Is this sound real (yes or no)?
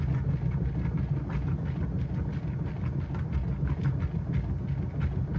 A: yes